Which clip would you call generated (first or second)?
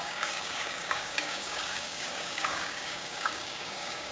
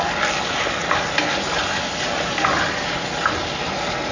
first